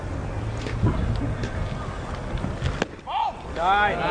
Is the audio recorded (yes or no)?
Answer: yes